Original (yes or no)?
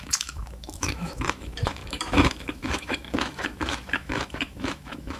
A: no